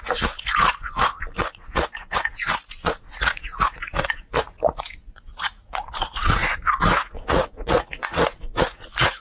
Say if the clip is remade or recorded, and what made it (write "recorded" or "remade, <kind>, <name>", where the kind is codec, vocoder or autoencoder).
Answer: remade, vocoder, Vocos